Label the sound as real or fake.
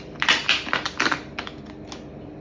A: real